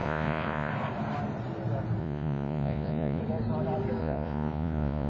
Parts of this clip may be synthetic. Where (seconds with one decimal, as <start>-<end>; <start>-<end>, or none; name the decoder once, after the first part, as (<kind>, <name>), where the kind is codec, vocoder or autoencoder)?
0.0-0.7 (vocoder, Vocos); 2.0-3.2; 4.0-5.1